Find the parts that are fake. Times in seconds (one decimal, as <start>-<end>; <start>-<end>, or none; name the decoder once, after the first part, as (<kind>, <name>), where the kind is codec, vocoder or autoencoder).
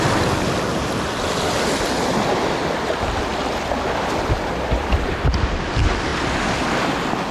3.3-5.6 (vocoder, BigVGAN v2)